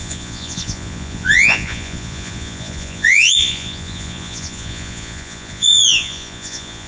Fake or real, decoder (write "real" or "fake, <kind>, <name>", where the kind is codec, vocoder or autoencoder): fake, vocoder, Vocos